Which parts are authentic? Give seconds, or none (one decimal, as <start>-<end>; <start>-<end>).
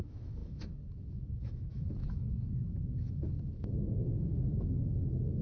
none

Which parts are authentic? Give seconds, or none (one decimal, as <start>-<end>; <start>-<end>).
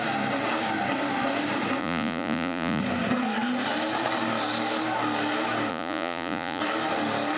0.0-1.8; 2.8-5.7; 6.6-7.4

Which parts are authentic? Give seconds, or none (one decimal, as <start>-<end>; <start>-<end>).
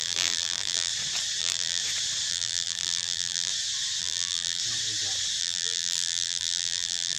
0.9-1.4; 1.8-2.3; 3.5-4.0; 4.6-5.4